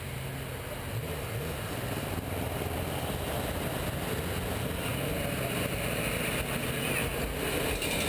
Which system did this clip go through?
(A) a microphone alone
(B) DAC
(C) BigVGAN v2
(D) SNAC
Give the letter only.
A